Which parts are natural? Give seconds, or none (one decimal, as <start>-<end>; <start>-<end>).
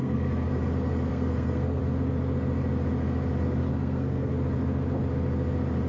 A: 0.5-1.1; 1.8-3.7; 4.3-5.9